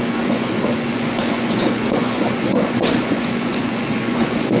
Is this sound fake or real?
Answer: fake